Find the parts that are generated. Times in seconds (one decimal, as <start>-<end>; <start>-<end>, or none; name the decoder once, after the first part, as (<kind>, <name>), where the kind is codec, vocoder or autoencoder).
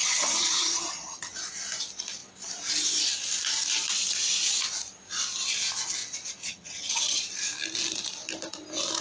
0.0-1.3 (vocoder, HiFi-GAN); 6.4-7.2